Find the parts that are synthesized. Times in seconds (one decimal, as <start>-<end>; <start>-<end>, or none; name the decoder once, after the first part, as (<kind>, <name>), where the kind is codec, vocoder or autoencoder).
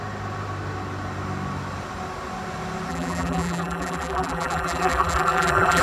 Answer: 2.9-5.8 (vocoder, BigVGAN v2)